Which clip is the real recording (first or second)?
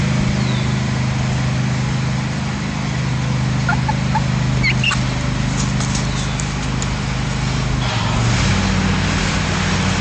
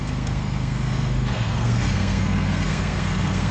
first